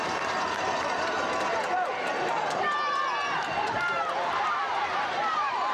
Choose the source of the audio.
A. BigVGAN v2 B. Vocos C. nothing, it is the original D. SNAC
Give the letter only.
A